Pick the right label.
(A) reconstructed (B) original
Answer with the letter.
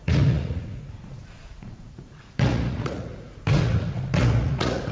A